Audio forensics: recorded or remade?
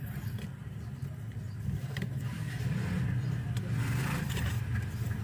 remade